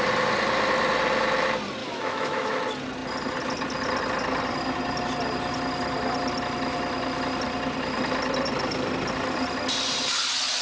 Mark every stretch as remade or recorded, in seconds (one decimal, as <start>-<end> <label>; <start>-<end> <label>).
0.0-1.8 recorded; 1.8-2.6 remade; 2.6-10.6 recorded